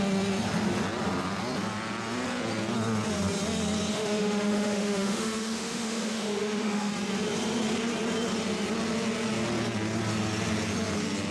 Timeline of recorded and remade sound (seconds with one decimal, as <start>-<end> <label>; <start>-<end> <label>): 0.0-3.9 recorded; 3.9-6.9 remade; 6.9-11.3 recorded